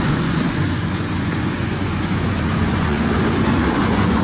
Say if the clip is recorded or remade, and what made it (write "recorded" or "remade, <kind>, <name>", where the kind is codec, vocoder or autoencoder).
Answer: remade, vocoder, Vocos